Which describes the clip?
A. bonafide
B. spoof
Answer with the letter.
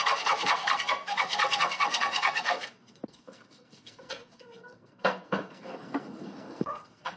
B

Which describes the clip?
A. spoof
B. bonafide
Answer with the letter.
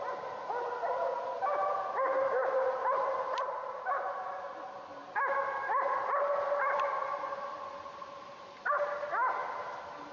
B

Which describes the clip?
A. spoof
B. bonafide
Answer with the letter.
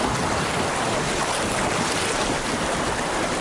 B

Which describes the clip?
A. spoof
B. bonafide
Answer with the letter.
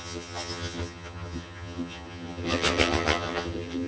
A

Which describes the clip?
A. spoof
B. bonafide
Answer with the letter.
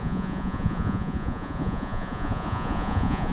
A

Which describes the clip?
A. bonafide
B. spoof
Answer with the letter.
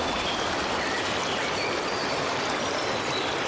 A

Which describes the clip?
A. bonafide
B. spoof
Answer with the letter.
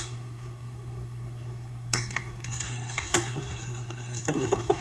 B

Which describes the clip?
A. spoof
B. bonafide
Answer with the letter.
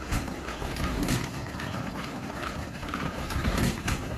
A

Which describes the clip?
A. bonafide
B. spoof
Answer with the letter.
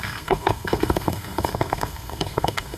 B